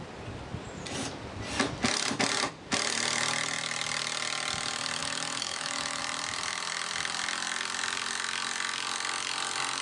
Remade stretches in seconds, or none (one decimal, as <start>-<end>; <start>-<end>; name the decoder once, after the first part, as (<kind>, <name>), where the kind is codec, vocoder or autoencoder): 5.0-6.0 (autoencoder, DAC-VAE)